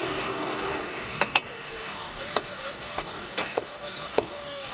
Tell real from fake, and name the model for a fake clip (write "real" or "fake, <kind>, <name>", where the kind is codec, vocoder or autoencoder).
fake, codec, DAC